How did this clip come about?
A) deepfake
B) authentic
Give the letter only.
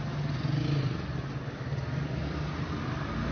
B